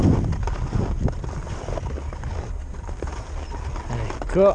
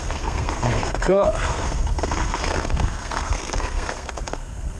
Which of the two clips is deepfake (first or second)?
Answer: second